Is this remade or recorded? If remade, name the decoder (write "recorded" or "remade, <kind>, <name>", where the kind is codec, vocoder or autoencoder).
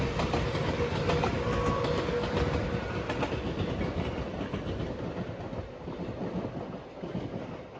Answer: recorded